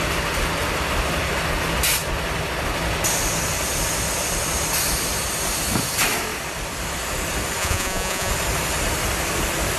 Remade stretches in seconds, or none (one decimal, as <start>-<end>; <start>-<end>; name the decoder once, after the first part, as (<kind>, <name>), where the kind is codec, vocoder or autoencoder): 7.6-8.3 (vocoder, Vocos)